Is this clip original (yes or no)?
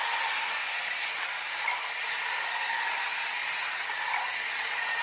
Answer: yes